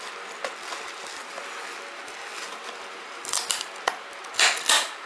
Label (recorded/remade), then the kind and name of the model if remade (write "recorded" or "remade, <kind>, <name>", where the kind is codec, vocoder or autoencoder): recorded